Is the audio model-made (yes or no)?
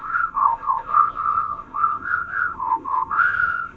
yes